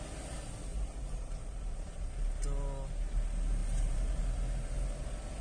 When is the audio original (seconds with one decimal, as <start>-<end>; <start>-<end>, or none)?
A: 0.0-0.7; 2.1-3.6; 4.2-5.4